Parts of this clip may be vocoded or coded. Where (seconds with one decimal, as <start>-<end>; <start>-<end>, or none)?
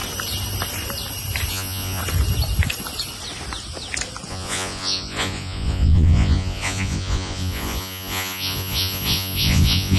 1.5-2.0; 4.3-10.0